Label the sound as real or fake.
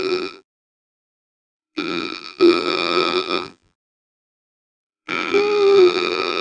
fake